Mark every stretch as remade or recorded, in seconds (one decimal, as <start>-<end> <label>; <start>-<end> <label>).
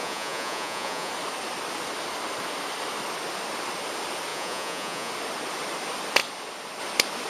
0.0-1.1 remade; 1.1-4.3 recorded; 4.3-5.1 remade; 5.1-7.3 recorded